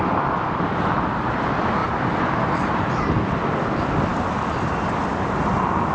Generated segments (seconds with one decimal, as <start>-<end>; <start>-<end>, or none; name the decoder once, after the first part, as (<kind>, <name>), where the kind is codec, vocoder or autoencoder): none